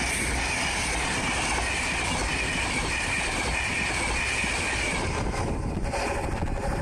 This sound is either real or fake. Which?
real